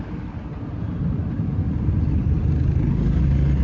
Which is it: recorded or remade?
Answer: recorded